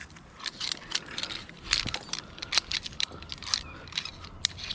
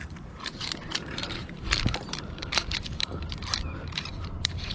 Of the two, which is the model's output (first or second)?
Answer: second